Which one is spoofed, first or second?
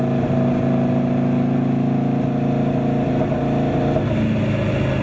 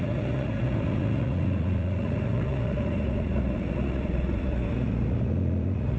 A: second